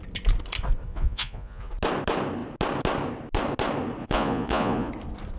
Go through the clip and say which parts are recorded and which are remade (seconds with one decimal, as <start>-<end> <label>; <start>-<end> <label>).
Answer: 0.0-0.9 recorded; 0.9-1.7 remade; 1.7-4.0 recorded; 4.0-4.9 remade; 4.9-5.4 recorded